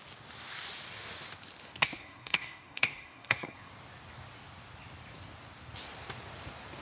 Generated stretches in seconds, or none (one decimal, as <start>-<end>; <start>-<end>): 2.0-3.7